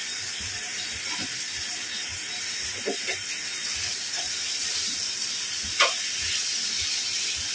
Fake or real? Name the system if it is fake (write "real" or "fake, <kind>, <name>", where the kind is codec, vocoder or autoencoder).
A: real